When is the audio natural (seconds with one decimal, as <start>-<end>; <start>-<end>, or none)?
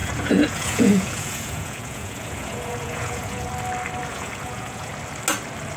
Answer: 3.5-4.1; 4.9-5.8